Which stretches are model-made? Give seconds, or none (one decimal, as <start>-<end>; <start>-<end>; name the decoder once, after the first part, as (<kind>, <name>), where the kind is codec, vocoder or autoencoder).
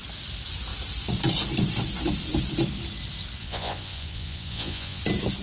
3.4-5.0 (vocoder, Vocos)